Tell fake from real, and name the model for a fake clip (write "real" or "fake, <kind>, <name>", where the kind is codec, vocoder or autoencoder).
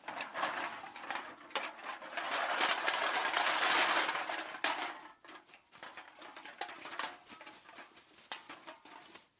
real